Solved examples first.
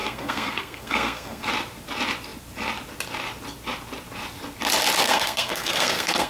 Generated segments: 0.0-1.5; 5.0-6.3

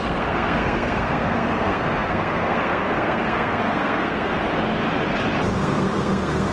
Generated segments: 0.0-4.3; 5.5-6.5

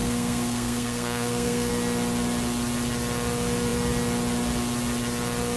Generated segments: 0.0-1.7